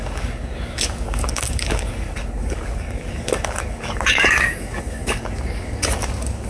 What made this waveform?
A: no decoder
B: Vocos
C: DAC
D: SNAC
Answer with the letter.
C